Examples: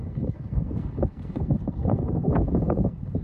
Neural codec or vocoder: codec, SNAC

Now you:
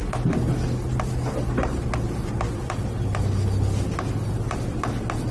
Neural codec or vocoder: none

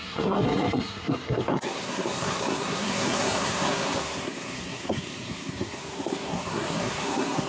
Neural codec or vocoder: codec, SNAC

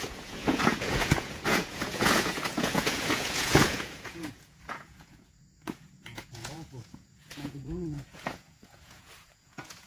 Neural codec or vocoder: vocoder, Vocos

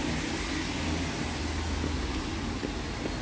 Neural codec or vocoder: none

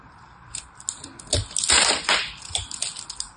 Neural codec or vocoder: none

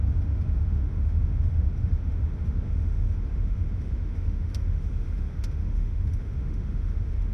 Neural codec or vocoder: autoencoder, DAC-VAE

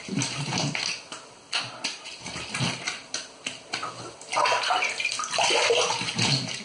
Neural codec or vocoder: none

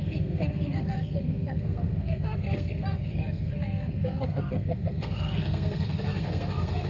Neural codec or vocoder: codec, SNAC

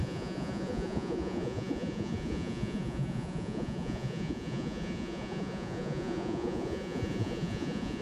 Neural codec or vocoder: vocoder, Vocos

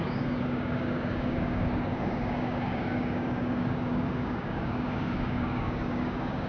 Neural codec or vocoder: codec, DAC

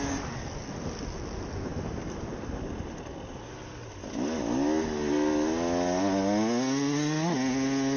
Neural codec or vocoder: none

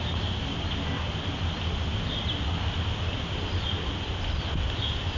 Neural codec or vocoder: none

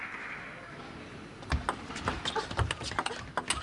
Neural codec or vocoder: none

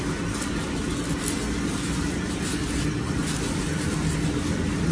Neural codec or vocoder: none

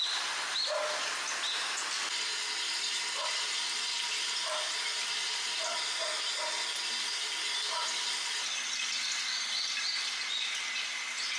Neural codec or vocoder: none